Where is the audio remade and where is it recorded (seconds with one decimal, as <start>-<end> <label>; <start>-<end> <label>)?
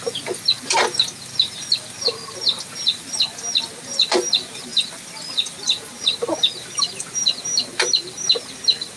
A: 0.0-9.0 recorded